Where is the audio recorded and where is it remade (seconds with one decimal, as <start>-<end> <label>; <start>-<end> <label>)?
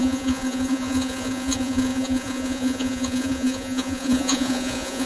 0.0-5.1 remade